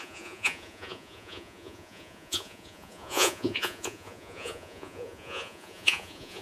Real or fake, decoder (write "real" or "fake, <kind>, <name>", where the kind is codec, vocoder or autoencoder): fake, vocoder, Vocos